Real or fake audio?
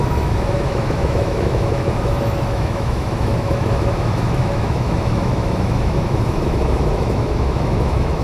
fake